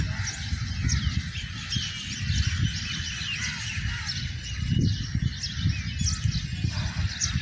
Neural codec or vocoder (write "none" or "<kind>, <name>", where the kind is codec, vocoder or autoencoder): none